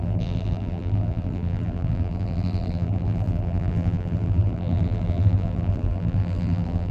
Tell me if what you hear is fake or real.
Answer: fake